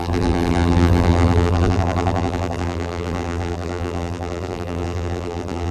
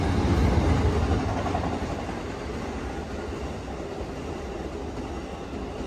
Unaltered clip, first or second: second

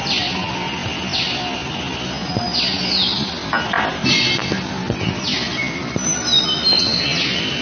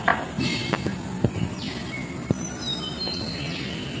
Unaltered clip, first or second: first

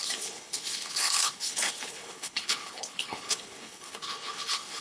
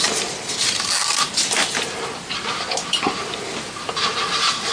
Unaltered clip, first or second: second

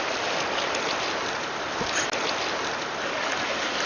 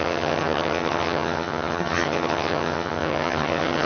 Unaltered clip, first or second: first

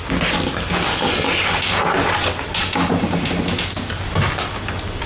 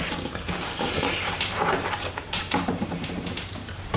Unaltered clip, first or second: first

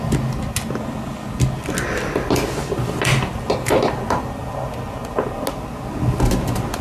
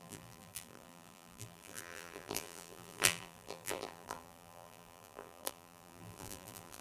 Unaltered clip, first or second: first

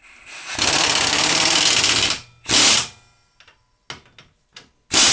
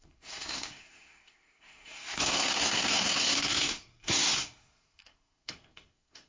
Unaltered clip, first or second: first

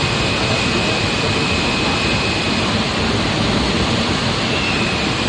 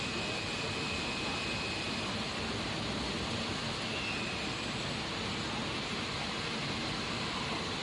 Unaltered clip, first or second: second